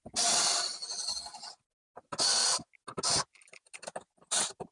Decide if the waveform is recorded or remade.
recorded